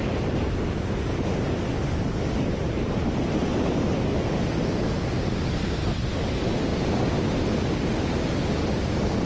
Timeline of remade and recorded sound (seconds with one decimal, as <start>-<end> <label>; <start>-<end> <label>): 0.0-3.4 recorded; 3.4-4.7 remade; 4.7-6.7 recorded; 6.7-7.2 remade; 7.2-9.3 recorded